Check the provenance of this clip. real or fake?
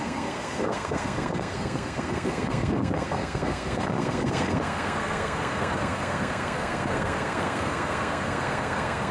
fake